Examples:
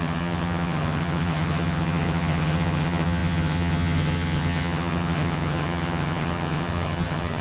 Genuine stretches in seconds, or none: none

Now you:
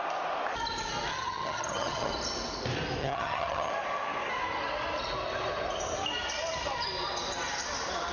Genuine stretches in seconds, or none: 0.0-1.1; 2.1-3.0; 3.7-8.1

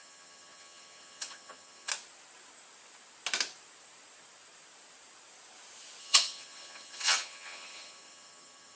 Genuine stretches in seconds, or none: 1.9-6.0

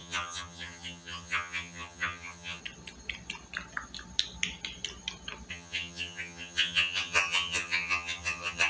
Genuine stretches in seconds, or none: 2.6-5.5

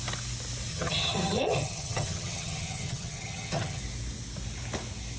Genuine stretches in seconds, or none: 0.0-0.7; 3.8-5.2

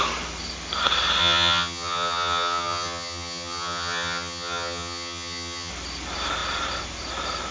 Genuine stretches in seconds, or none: 0.0-1.2; 5.7-7.5